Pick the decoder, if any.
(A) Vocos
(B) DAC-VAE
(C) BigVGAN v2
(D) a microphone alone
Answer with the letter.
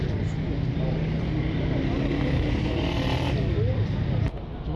D